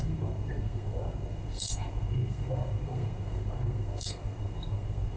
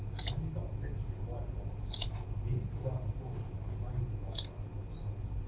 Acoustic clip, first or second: second